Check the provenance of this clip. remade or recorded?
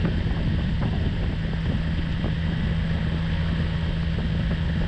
recorded